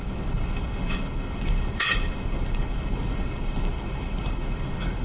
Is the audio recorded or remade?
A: remade